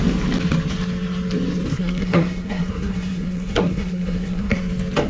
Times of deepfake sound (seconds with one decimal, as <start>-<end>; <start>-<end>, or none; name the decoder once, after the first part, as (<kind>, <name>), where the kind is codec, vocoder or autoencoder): 1.7-4.6 (codec, SNAC)